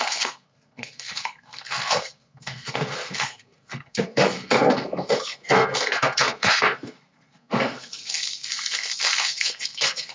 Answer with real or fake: fake